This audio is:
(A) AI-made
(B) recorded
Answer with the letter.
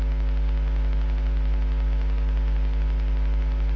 B